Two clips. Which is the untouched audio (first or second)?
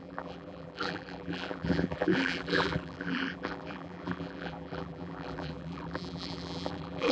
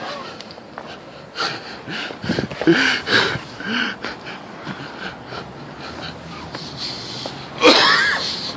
second